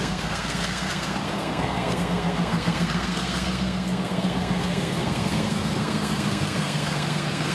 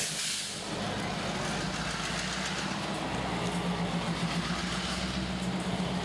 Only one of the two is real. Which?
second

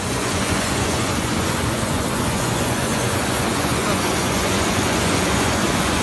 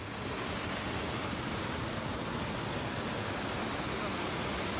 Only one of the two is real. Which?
second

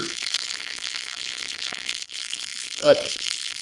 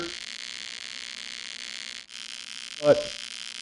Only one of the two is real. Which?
second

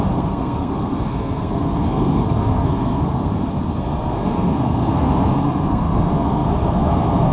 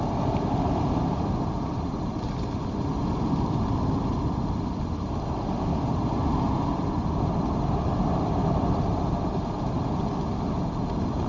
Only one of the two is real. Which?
second